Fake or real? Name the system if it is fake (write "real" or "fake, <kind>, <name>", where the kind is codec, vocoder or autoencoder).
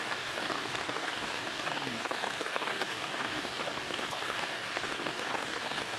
fake, codec, DAC